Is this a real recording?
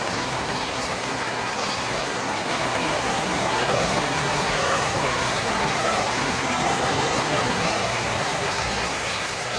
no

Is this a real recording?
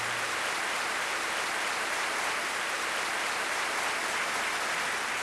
yes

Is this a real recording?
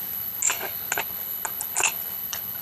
no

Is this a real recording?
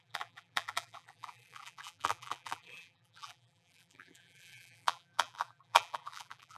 no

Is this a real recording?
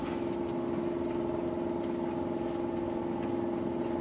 yes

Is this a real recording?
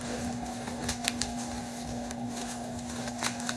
no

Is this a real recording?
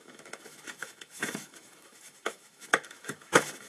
no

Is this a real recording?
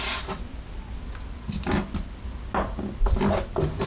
yes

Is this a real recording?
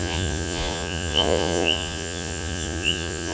no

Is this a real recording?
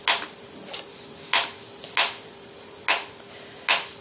yes